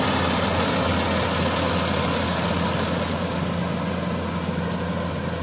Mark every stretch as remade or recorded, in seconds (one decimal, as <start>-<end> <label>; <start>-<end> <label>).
0.0-5.4 recorded